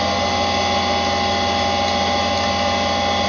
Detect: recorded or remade recorded